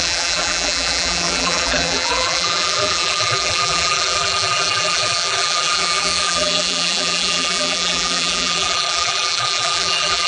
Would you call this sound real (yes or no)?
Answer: no